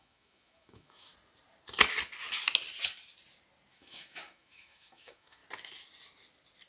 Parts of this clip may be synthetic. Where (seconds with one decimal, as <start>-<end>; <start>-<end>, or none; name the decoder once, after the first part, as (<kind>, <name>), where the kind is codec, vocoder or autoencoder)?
0.0-1.1 (autoencoder, DAC-VAE); 3.7-5.4

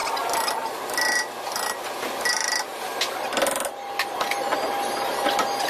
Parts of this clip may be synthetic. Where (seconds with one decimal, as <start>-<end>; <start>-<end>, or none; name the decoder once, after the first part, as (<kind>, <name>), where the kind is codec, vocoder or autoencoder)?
none